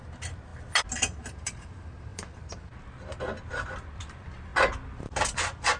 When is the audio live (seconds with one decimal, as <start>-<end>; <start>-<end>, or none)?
0.0-5.8